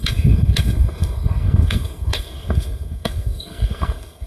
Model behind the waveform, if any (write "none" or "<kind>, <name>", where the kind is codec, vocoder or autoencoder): codec, SNAC